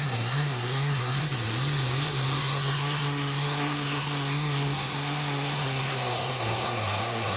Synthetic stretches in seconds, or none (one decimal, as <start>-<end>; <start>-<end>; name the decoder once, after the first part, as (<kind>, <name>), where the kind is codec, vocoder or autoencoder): 0.0-1.2 (codec, SNAC); 2.4-7.4